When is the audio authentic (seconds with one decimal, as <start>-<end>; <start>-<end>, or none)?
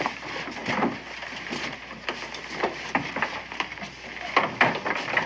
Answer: 0.0-5.3